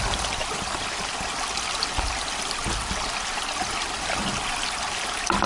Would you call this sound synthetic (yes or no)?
no